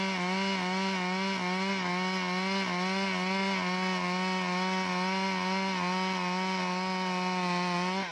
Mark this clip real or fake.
real